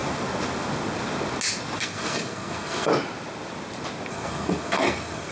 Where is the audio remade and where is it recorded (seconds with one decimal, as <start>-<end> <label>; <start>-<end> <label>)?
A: 0.0-1.8 recorded; 1.8-2.9 remade; 2.9-4.1 recorded; 4.1-5.3 remade